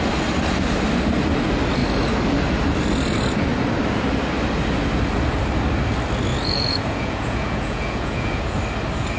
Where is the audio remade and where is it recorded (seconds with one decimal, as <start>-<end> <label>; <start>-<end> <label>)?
0.0-6.3 recorded; 6.3-8.6 remade; 8.6-9.2 recorded